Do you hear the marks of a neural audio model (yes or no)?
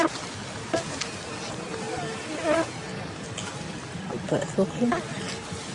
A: no